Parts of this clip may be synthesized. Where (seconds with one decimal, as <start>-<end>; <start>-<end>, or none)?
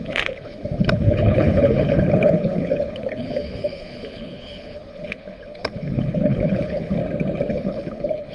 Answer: 0.0-7.0; 7.5-8.3